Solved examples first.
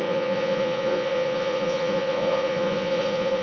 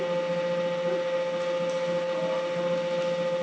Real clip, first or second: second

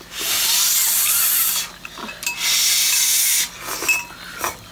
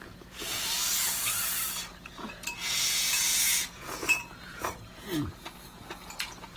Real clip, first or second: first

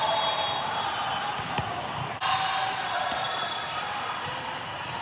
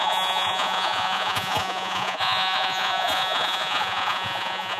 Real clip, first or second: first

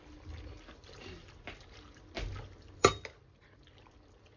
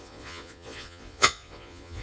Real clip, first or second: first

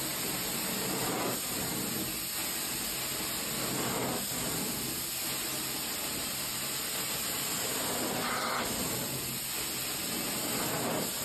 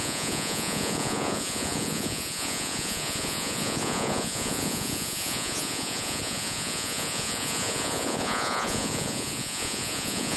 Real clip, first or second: first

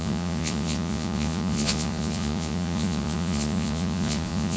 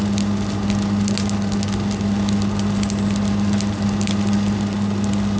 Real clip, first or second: second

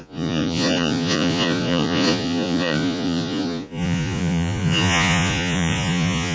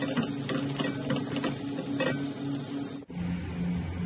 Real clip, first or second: second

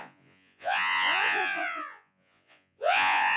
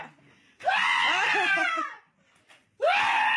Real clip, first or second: second